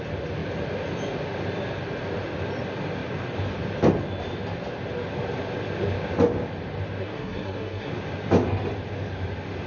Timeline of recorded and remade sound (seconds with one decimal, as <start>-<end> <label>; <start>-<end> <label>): 0.0-7.0 recorded; 7.0-7.9 remade; 7.9-9.7 recorded